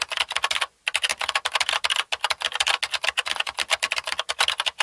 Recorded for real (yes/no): yes